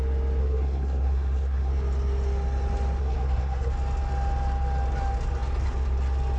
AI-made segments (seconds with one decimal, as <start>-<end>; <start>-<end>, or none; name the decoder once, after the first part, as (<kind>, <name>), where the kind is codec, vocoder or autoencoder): 0.4-1.7 (codec, SNAC); 3.0-3.7